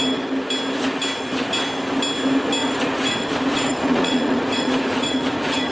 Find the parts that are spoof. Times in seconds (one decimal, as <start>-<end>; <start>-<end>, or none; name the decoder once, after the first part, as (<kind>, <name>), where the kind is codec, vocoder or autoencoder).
2.6-5.7 (vocoder, Vocos)